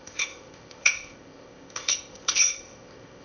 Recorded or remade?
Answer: remade